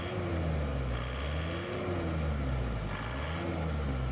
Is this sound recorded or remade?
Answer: recorded